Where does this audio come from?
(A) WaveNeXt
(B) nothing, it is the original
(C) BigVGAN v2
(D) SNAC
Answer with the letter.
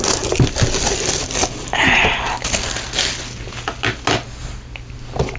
B